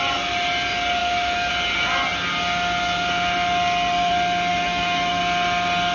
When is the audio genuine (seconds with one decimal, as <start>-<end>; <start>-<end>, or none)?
0.0-1.0; 1.5-4.5; 5.2-5.9